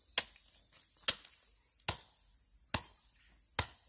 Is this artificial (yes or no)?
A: no